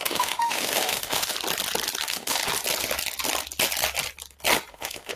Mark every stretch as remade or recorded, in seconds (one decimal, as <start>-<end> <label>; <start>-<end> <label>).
0.0-1.3 remade; 1.3-2.0 recorded; 2.0-2.4 remade; 2.4-4.7 recorded; 4.7-5.2 remade